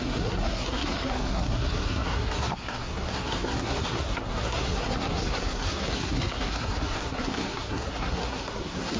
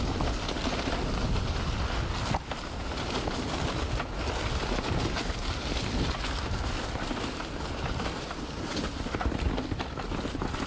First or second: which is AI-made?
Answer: first